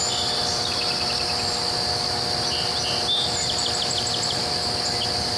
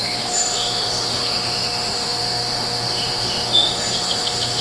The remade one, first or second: second